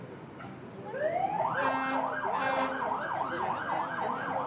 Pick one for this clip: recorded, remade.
recorded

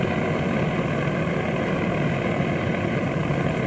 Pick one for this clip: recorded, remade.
recorded